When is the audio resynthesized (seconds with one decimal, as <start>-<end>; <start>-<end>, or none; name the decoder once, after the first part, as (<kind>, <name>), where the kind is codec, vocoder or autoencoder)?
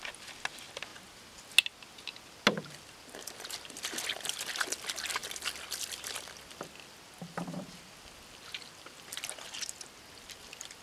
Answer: 5.2-6.6 (vocoder, BigVGAN v2)